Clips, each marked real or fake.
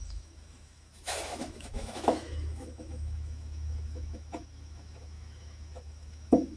fake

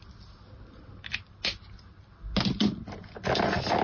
real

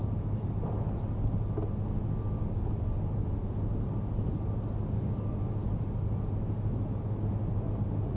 real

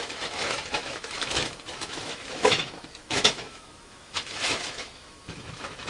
fake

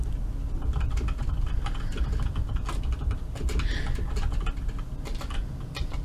real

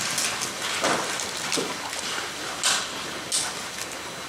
real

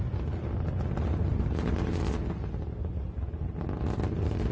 real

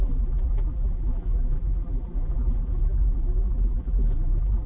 fake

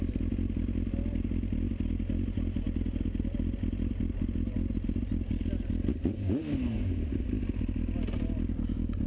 real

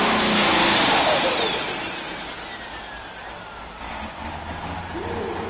real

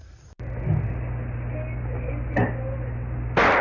real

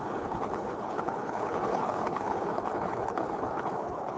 fake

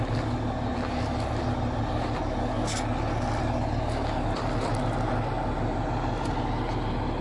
real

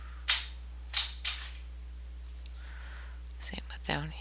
real